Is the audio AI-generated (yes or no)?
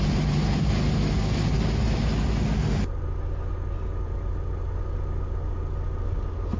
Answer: no